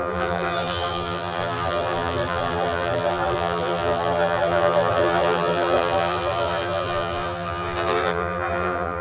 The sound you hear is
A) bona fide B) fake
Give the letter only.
B